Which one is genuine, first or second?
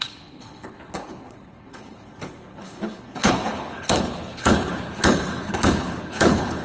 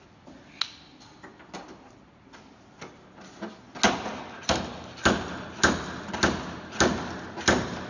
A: second